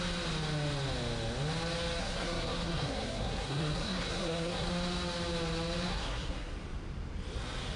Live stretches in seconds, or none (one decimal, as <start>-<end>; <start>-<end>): 0.0-2.0; 4.7-5.9; 6.5-7.8

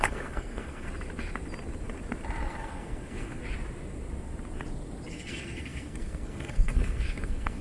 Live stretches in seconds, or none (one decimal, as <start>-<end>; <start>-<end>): 0.9-2.4; 3.4-5.1

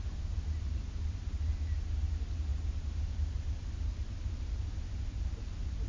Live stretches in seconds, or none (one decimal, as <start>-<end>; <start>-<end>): 0.0-5.9

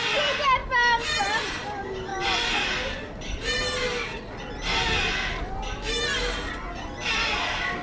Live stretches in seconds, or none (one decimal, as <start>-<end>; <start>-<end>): 0.0-7.8

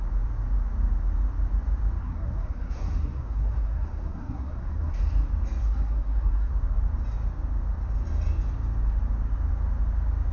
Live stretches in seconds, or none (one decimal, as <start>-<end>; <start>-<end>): 0.0-2.0; 5.0-5.6; 6.5-10.3

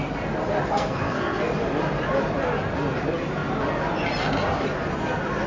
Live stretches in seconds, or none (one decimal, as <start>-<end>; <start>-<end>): 0.0-0.7; 1.5-5.5